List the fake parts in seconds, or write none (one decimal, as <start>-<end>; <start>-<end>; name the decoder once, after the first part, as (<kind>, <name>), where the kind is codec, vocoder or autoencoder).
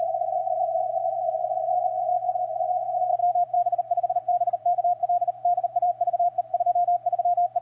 1.4-2.0 (vocoder, BigVGAN v2); 3.2-6.7